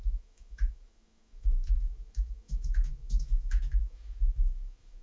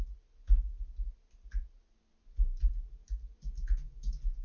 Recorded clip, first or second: second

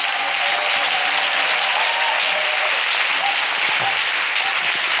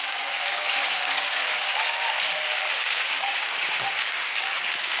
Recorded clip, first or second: first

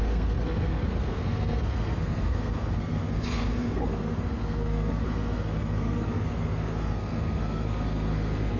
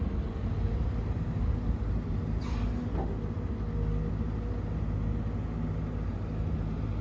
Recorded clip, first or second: second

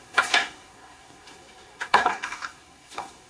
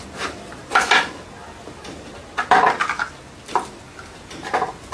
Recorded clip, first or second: second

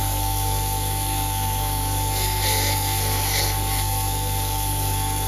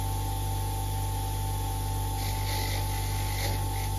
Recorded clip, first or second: second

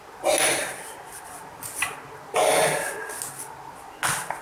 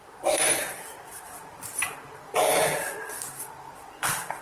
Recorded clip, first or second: first